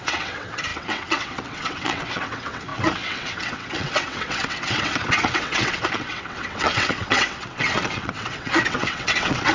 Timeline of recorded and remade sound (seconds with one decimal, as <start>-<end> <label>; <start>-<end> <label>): 0.0-9.5 remade